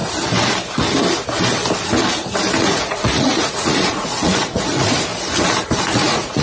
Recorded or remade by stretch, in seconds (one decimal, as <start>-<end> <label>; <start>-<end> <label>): 0.0-2.6 recorded; 2.6-5.1 remade; 5.1-5.8 recorded; 5.8-6.4 remade